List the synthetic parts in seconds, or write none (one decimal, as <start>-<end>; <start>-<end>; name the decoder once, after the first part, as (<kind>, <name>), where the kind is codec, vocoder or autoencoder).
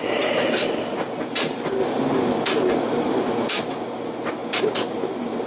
none